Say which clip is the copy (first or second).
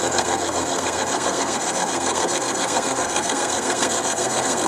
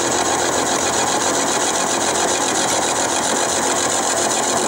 first